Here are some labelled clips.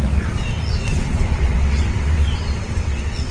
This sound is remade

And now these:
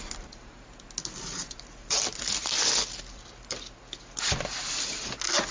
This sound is recorded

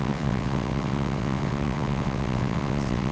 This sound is remade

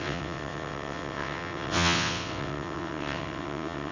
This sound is remade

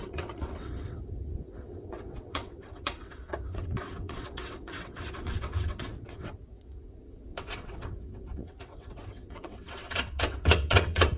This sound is remade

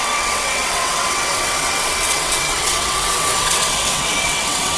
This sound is remade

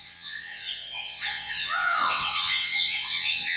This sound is remade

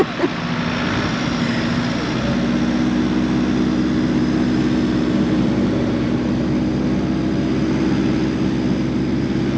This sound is recorded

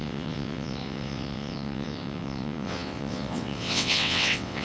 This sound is remade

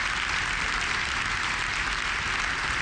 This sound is recorded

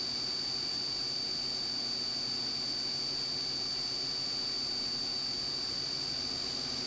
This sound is recorded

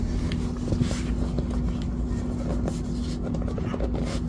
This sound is recorded